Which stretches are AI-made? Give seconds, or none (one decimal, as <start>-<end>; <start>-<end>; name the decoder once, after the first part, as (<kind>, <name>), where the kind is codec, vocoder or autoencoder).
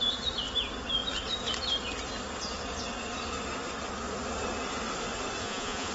5.4-5.9 (vocoder, Vocos)